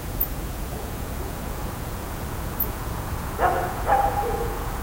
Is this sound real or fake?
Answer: fake